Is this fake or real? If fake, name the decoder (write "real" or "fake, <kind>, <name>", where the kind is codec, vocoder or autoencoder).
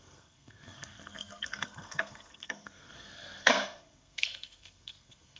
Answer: fake, codec, SNAC